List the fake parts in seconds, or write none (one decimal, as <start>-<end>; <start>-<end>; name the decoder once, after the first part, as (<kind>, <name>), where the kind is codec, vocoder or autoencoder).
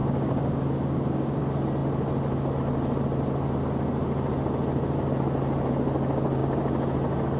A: 0.0-1.4 (codec, DAC)